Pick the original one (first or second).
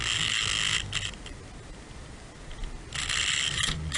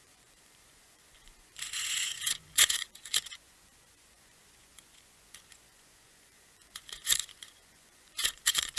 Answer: first